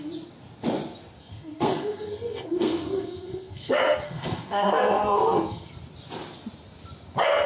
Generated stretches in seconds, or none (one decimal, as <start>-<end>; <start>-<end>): 1.2-5.7